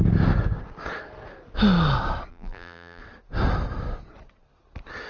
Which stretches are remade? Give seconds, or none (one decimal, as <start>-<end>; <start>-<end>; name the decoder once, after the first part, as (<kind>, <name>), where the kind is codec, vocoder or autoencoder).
2.3-3.0 (vocoder, BigVGAN v2)